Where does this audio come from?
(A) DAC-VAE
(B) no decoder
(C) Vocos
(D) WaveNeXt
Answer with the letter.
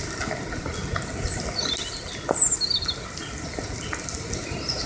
B